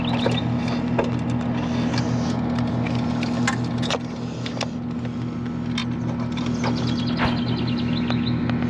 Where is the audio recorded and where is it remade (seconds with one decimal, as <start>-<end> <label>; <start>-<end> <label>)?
0.0-8.7 recorded